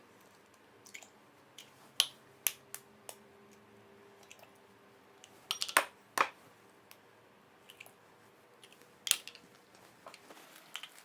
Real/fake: real